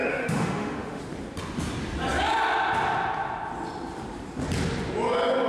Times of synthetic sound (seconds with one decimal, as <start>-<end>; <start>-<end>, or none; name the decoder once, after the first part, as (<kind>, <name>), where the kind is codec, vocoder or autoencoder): 0.0-1.0 (autoencoder, DAC-VAE)